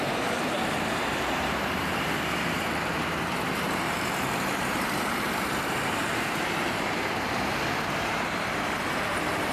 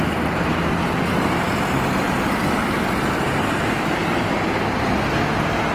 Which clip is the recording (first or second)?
second